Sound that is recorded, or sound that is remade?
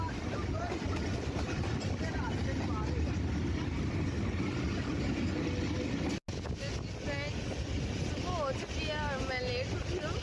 recorded